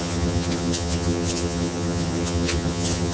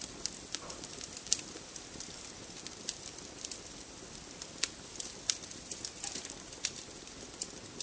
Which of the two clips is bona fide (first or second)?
second